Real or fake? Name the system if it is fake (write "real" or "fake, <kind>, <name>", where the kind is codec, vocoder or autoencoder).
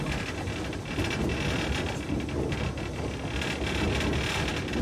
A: real